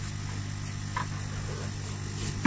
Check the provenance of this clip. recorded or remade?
recorded